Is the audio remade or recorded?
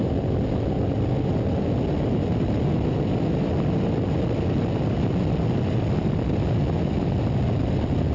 recorded